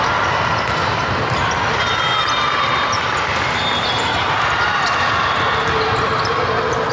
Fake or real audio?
real